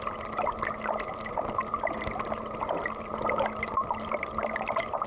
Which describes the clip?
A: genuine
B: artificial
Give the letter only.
A